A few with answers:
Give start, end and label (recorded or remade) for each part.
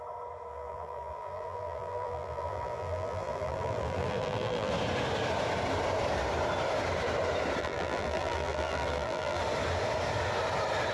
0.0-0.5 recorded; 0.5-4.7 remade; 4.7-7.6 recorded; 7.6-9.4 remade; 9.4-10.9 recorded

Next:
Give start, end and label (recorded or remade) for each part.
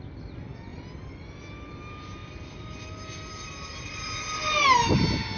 0.0-0.7 recorded; 0.7-1.2 remade; 1.2-2.2 recorded; 2.2-4.1 remade; 4.1-5.4 recorded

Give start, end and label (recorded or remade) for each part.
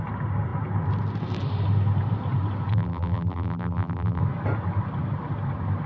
0.0-2.7 recorded; 2.7-4.2 remade; 4.2-5.9 recorded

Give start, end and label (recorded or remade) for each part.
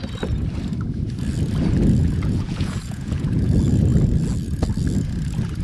0.0-2.0 recorded; 2.0-3.5 remade; 3.5-5.6 recorded